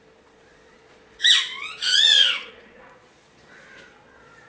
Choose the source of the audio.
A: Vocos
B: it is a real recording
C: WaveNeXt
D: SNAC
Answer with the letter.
A